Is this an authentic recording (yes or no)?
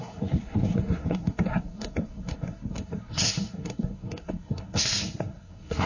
no